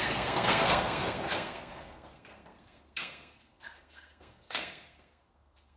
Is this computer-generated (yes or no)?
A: yes